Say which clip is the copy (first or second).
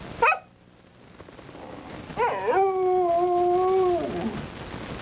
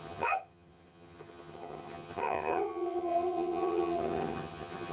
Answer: second